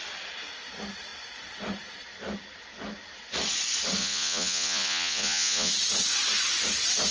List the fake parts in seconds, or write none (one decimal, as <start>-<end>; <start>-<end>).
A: 4.0-5.7

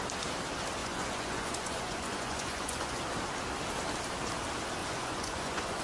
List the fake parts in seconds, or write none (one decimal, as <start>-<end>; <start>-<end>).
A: 0.8-3.0; 4.8-5.8

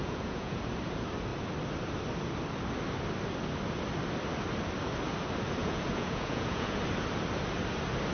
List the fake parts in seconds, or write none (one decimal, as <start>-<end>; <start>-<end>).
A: 0.0-0.6; 5.6-6.8

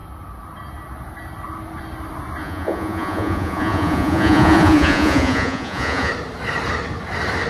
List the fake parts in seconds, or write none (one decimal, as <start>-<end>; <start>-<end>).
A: 2.4-6.1

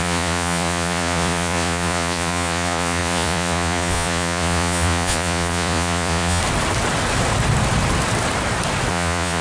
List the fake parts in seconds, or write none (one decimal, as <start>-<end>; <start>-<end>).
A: 0.0-6.4; 8.9-9.4